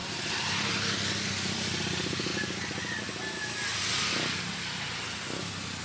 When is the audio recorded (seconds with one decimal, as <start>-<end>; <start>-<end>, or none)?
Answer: 0.0-5.8